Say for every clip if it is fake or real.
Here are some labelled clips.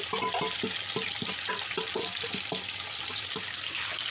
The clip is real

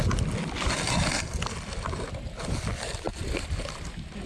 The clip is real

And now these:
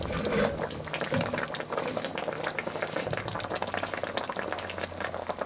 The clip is real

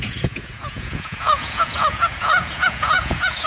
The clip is fake